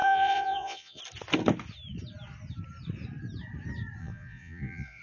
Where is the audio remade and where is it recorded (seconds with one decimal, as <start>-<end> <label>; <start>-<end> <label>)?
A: 0.0-1.0 remade; 1.0-4.0 recorded; 4.0-5.0 remade